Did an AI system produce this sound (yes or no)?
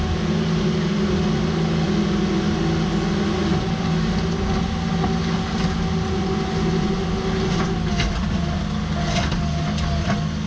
no